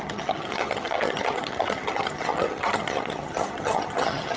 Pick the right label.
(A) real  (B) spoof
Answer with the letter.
B